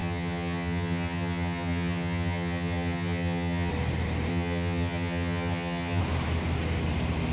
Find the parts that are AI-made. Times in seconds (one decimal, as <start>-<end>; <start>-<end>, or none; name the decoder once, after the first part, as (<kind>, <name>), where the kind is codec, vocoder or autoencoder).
0.0-3.7 (vocoder, HiFi-GAN); 4.3-6.0